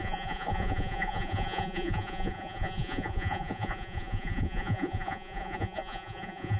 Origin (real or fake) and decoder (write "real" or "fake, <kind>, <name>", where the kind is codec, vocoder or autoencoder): fake, vocoder, Vocos